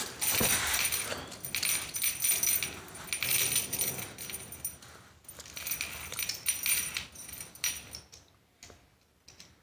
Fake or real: real